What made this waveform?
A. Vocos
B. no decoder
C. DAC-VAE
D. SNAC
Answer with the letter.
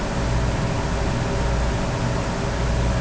B